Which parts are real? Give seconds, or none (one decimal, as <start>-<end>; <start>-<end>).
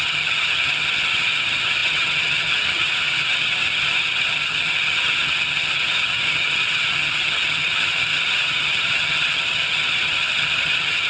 none